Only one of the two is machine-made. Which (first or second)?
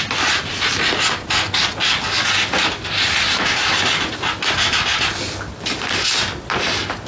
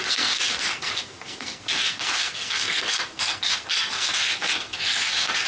second